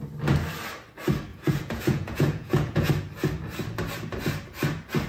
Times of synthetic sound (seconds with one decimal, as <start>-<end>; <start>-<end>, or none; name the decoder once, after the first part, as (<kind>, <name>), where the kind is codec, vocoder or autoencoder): 1.3-2.9 (vocoder, Vocos)